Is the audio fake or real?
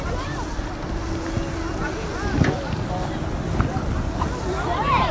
real